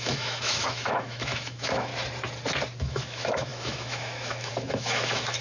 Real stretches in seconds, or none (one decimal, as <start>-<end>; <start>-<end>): 1.9-2.8